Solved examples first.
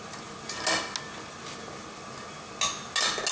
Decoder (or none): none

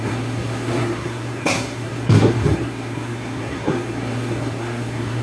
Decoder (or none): codec, SNAC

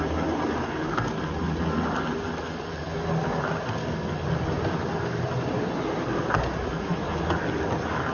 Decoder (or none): none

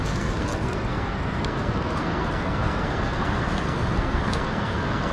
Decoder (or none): codec, SNAC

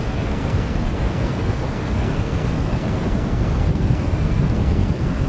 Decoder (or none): codec, SNAC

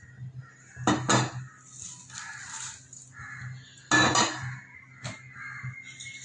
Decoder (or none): none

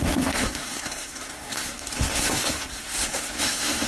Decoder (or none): codec, SNAC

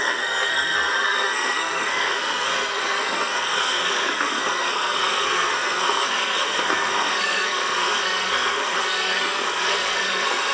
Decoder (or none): codec, SNAC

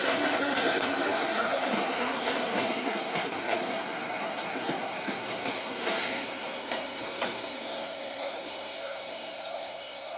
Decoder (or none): codec, SNAC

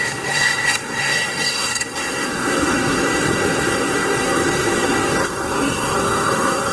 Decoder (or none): codec, SNAC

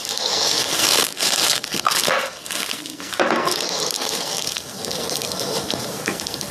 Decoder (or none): codec, SNAC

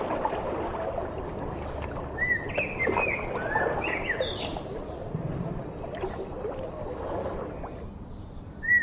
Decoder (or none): none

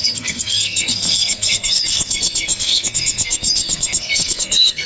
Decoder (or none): codec, SNAC